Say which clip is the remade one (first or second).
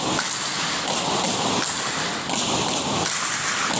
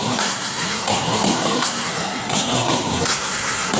second